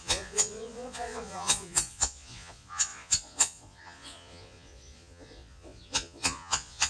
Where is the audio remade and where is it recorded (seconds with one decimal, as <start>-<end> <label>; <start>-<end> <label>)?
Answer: 0.0-6.9 remade